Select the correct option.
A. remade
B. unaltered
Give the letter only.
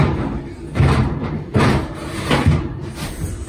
A